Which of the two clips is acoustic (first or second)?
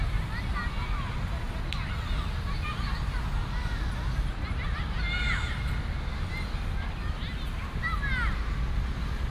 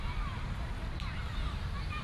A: first